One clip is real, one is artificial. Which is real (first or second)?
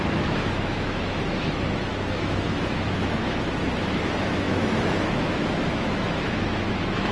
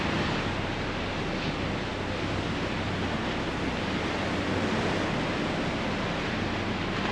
second